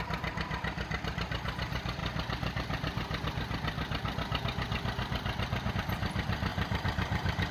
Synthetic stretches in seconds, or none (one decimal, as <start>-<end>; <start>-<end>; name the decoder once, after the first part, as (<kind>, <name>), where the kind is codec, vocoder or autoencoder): 6.5-7.5 (vocoder, BigVGAN v2)